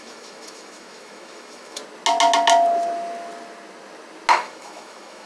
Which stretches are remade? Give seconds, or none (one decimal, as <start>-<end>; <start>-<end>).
0.0-1.8; 4.3-5.3